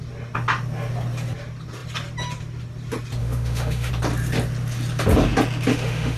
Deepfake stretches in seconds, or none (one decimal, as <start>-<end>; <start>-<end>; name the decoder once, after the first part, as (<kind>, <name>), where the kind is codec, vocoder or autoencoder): 3.2-3.9 (autoencoder, DAC-VAE); 5.7-6.2